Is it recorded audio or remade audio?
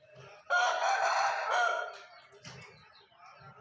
recorded